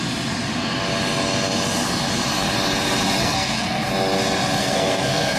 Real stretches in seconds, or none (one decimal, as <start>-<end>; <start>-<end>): 0.0-3.2; 3.9-4.6